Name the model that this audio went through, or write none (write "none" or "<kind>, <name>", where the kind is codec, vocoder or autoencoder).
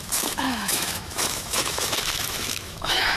autoencoder, DAC-VAE